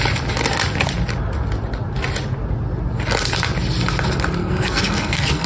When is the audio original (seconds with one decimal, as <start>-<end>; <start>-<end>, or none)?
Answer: 0.0-4.4